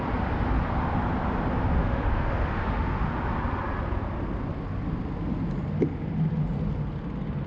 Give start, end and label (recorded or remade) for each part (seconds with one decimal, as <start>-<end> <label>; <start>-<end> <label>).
0.0-1.8 recorded; 1.8-3.1 remade; 3.1-7.5 recorded